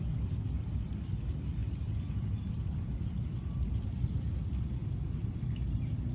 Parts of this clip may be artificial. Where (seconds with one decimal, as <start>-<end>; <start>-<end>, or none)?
1.6-3.8; 4.8-5.4